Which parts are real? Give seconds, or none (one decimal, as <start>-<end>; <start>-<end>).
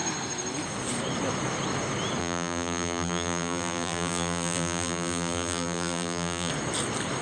0.0-2.2; 6.5-7.2